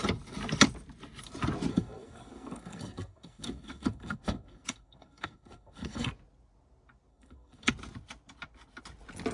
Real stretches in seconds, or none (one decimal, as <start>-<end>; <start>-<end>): 0.0-1.7; 6.1-7.1; 7.7-9.3